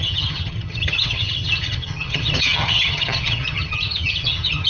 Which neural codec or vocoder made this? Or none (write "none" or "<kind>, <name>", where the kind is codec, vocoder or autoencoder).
vocoder, HiFi-GAN